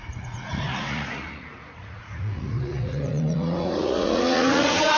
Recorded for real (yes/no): no